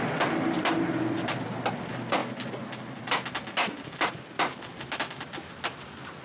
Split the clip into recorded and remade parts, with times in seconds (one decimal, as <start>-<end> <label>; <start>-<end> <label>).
0.0-6.2 recorded

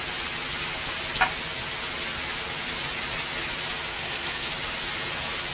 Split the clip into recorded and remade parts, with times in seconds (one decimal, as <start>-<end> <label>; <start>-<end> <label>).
0.0-3.9 recorded; 3.9-4.5 remade; 4.5-5.5 recorded

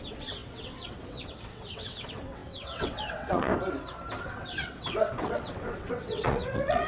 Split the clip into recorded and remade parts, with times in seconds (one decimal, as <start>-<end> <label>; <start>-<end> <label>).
0.0-3.5 remade; 3.5-4.2 recorded; 4.2-6.9 remade